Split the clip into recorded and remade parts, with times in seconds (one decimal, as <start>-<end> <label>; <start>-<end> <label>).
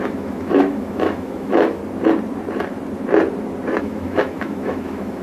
0.0-1.8 remade; 1.8-3.8 recorded; 3.8-5.2 remade